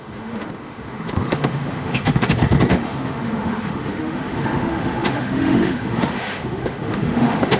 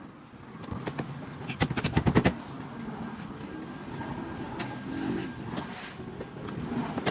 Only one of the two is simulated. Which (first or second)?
first